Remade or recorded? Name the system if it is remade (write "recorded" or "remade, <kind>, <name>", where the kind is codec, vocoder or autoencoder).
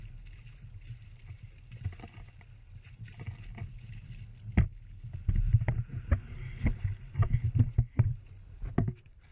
recorded